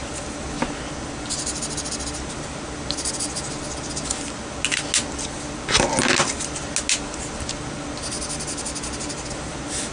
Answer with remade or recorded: recorded